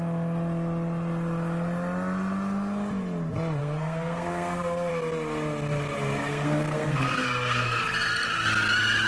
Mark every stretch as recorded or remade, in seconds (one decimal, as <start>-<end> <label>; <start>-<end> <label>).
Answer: 0.0-3.6 recorded; 3.6-4.9 remade; 4.9-6.3 recorded; 6.3-7.8 remade; 7.8-9.1 recorded